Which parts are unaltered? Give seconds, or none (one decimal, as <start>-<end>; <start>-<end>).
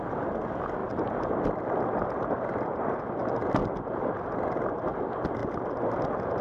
0.0-0.8; 1.3-3.6; 4.3-6.4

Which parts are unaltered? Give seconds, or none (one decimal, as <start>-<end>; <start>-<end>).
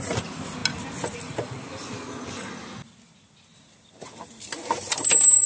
0.0-5.5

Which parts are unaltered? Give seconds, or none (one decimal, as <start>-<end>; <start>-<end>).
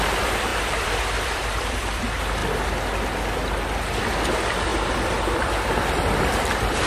2.4-4.0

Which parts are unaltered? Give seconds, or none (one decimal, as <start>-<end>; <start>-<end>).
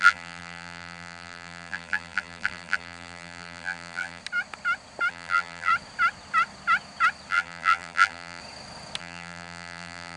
4.2-5.1; 5.7-7.3; 8.4-9.0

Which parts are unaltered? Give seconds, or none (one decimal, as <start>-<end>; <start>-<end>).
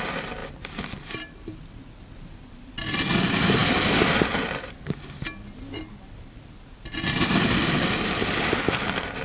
0.0-9.2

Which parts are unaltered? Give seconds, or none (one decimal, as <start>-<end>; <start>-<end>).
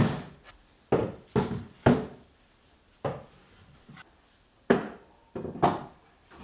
0.0-1.0; 4.8-5.2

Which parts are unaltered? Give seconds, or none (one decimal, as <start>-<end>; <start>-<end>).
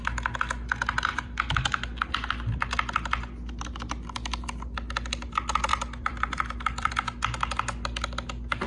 0.0-1.1; 2.1-5.7; 6.9-8.7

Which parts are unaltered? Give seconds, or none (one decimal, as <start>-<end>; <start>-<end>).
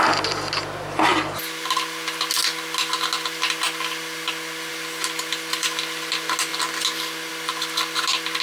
0.0-8.4